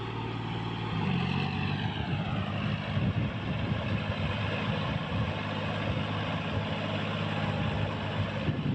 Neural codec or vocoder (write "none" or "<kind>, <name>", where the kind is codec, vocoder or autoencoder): none